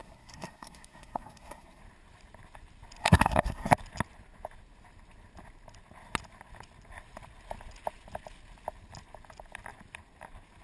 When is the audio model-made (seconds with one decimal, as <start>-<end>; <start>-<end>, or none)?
0.0-1.8; 3.0-3.7